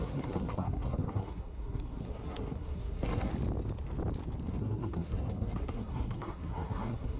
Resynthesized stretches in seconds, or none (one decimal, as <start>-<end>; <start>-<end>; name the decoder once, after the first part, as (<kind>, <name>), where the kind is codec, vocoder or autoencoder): 0.0-3.3 (codec, SNAC); 4.5-7.2